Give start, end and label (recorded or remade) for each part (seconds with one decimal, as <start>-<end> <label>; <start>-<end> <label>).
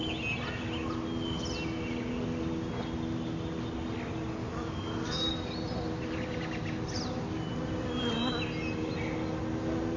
0.0-4.4 recorded; 4.4-5.3 remade; 5.3-10.0 recorded